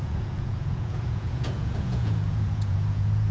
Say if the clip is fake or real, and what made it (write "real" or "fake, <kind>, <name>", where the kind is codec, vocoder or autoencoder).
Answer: fake, vocoder, Vocos